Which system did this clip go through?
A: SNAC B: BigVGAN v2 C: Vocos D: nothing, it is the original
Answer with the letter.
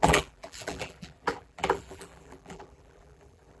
B